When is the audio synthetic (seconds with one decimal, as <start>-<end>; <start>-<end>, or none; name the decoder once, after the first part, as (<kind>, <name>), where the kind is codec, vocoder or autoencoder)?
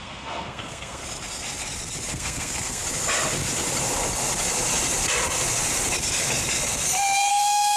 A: 0.0-1.0 (codec, SNAC); 2.1-2.8; 7.3-7.8